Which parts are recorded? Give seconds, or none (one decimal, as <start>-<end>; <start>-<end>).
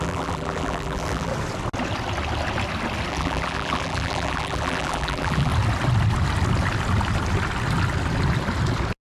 1.3-3.1; 5.5-9.0